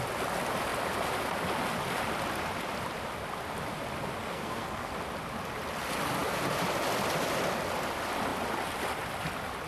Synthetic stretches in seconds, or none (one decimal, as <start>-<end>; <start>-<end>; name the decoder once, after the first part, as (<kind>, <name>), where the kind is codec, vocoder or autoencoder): 4.2-4.9 (codec, SNAC)